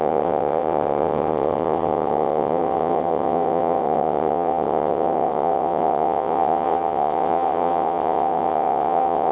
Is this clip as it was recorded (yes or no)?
no